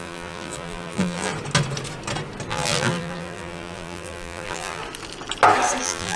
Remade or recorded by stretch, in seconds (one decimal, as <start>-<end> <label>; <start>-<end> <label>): 0.0-1.3 remade; 1.3-2.5 recorded; 2.5-4.8 remade; 4.8-5.8 recorded; 5.8-6.2 remade